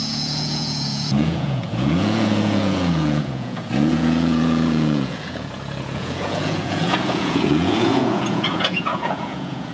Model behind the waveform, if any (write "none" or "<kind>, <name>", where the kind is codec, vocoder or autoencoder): vocoder, Vocos